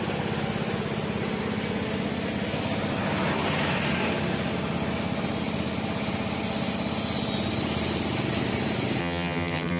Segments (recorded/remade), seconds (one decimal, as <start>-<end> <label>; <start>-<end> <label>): 0.0-9.0 recorded; 9.0-9.8 remade

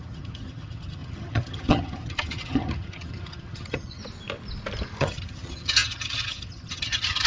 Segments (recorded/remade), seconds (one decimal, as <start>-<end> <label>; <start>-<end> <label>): 0.0-4.0 remade; 4.0-5.0 recorded; 5.0-7.3 remade

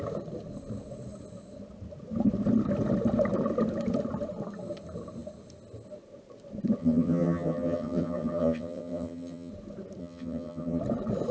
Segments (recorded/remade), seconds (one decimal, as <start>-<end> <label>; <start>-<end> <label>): 0.0-6.8 recorded; 6.8-9.5 remade; 9.5-10.0 recorded; 10.0-10.8 remade; 10.8-11.3 recorded